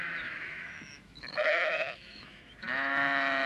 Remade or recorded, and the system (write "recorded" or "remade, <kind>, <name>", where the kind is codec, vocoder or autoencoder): remade, autoencoder, DAC-VAE